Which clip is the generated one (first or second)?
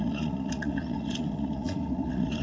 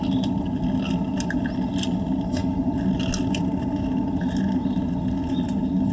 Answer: first